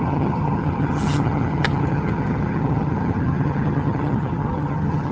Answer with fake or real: fake